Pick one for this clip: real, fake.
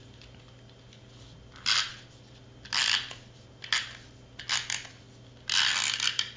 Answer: real